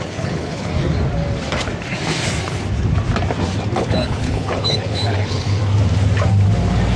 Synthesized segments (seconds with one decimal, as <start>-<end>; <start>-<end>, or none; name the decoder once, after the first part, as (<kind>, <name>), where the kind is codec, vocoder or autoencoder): 0.0-0.7 (codec, HILCodec); 3.8-5.6